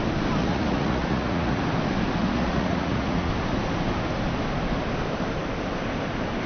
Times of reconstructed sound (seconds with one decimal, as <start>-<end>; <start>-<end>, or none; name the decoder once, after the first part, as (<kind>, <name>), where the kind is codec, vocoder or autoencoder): 0.4-1.6 (vocoder, Vocos); 2.2-3.3